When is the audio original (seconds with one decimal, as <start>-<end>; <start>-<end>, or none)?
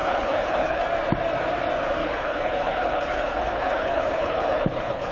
0.8-2.0